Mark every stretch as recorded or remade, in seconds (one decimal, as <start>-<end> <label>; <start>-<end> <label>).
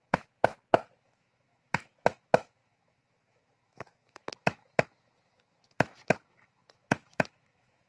0.0-0.5 remade; 0.5-1.0 recorded; 1.0-7.9 remade